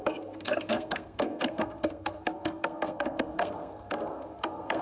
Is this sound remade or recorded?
remade